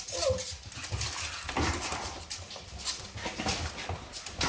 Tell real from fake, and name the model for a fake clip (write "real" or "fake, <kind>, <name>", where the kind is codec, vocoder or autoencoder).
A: real